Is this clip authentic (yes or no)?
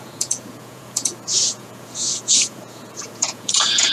no